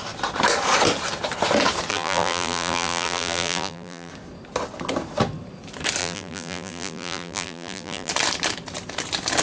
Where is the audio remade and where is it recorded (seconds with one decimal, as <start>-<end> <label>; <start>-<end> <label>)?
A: 0.0-1.9 recorded; 1.9-4.1 remade; 4.1-6.0 recorded; 6.0-8.1 remade; 8.1-9.4 recorded